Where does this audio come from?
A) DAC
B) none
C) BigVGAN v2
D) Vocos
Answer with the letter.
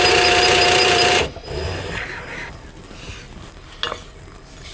B